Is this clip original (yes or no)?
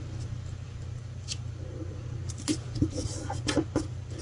yes